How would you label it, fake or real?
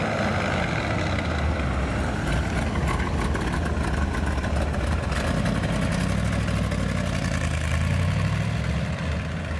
real